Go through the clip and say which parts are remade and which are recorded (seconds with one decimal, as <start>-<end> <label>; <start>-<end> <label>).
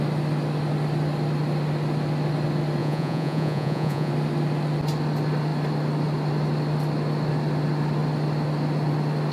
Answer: 0.0-2.8 recorded; 2.8-4.1 remade; 4.1-9.3 recorded